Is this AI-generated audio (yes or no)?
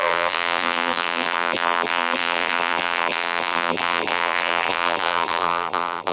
yes